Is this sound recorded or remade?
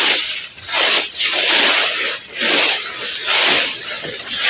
recorded